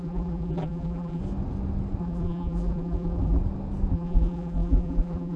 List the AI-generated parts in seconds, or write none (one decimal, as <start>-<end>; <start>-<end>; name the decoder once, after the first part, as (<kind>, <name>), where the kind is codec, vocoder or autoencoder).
0.0-1.2 (vocoder, BigVGAN v2); 2.0-3.4; 3.9-5.4